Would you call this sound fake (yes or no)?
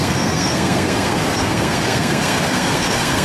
yes